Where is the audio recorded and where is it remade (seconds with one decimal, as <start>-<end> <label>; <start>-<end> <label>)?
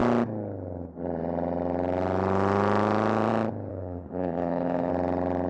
0.0-3.7 recorded; 3.7-4.9 remade; 4.9-5.5 recorded